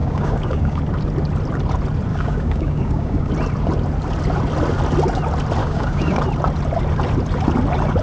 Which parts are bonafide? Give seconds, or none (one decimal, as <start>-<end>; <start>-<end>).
0.8-2.1; 3.3-5.6; 6.2-8.0